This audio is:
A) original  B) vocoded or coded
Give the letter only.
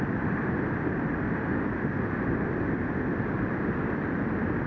A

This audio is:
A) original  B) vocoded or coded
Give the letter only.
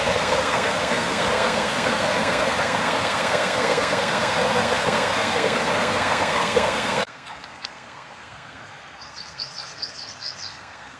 B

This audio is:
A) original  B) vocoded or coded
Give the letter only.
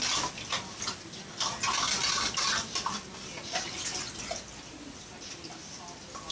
A